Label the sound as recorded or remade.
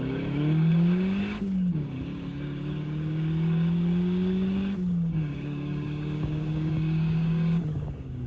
remade